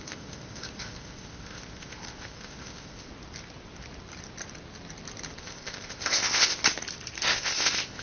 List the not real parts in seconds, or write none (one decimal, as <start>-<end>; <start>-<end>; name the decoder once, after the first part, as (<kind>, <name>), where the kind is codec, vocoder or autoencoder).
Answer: 0.0-3.1 (codec, ZipCodec); 5.4-6.6; 7.3-8.0

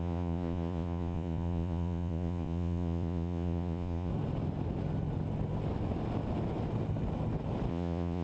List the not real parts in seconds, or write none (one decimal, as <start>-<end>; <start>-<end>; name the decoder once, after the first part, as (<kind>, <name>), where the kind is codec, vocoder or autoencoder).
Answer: 0.0-4.1 (vocoder, Vocos); 7.7-8.2